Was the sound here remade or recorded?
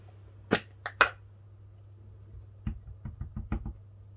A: recorded